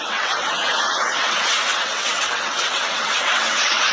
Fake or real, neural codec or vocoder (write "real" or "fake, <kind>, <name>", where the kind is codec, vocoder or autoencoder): fake, vocoder, WaveNeXt